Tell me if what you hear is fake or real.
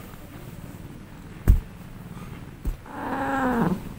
real